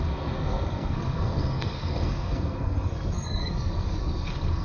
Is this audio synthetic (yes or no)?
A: yes